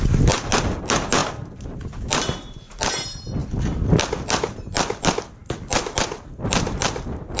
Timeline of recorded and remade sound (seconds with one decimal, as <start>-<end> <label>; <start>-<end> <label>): 0.0-7.4 recorded

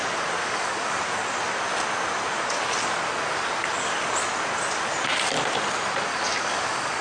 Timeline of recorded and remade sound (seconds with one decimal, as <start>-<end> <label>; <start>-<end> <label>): 0.0-0.4 recorded; 0.4-1.0 remade; 1.0-6.1 recorded; 6.1-7.0 remade

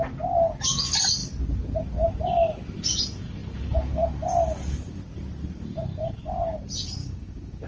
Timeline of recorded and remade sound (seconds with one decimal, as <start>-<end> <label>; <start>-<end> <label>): 0.0-7.0 recorded; 7.0-7.7 remade

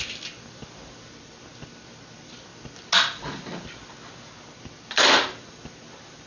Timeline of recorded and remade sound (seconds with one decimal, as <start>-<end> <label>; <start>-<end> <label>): 0.0-6.3 recorded

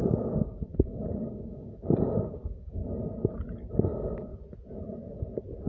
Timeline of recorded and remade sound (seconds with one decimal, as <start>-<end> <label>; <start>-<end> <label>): 0.0-2.8 remade; 2.8-3.7 recorded; 3.7-4.3 remade; 4.3-5.7 recorded